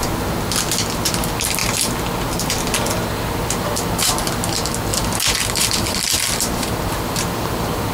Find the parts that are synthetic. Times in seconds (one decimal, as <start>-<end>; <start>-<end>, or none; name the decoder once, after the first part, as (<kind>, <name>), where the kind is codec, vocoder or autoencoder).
4.9-7.9 (vocoder, BigVGAN v2)